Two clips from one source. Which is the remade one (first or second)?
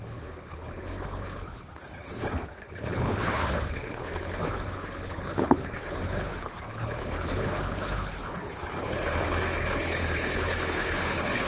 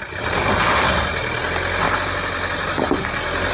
first